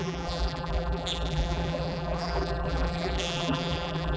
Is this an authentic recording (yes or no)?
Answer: no